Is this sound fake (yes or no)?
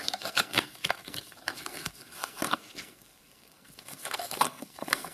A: yes